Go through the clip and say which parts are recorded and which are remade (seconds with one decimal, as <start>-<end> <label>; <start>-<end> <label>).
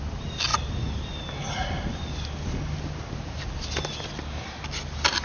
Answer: 0.0-5.2 recorded